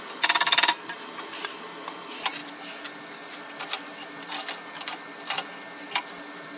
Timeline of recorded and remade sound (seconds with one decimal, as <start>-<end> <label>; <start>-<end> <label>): 0.0-6.6 recorded